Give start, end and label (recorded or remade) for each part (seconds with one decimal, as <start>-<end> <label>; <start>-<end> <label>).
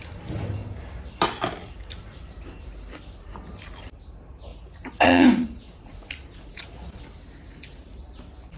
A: 0.0-4.5 recorded; 4.5-7.0 remade; 7.0-8.6 recorded